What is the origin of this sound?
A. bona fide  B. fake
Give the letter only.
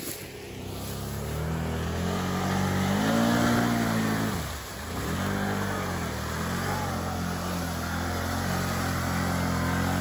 A